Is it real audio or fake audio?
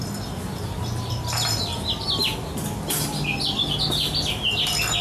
real